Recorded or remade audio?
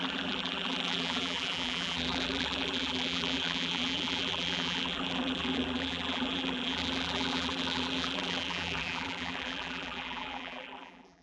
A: remade